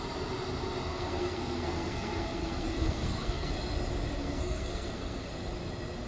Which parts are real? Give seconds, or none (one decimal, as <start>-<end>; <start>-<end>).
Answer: 0.0-0.9; 3.5-4.2; 5.3-6.1